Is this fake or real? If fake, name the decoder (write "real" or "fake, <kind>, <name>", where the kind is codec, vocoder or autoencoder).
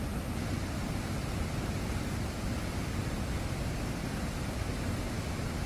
real